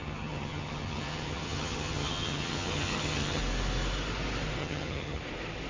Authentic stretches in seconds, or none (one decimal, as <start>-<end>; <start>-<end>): 3.4-4.6; 5.2-5.7